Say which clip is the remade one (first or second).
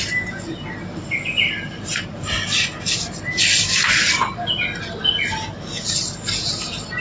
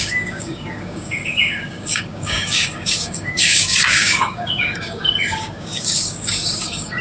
second